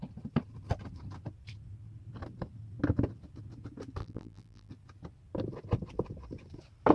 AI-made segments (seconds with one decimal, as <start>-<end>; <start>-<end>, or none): 4.0-4.7